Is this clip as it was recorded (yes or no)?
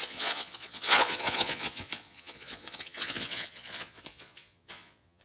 no